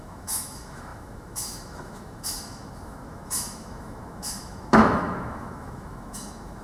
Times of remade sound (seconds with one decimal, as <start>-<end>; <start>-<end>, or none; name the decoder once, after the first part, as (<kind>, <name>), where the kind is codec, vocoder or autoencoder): 0.0-6.6 (autoencoder, DAC-VAE)